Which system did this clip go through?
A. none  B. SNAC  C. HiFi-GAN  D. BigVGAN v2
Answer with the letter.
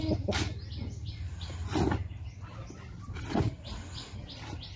A